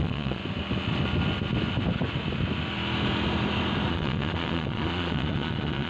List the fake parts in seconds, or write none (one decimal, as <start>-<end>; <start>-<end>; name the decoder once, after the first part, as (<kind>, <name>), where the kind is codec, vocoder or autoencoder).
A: 0.0-0.4 (vocoder, Vocos); 3.9-5.9